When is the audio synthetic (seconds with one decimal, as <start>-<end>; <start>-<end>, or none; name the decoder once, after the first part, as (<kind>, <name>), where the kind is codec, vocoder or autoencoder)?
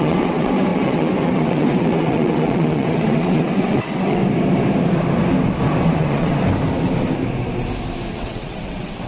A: 0.0-4.2 (vocoder, WaveNeXt); 5.8-6.3; 8.1-9.1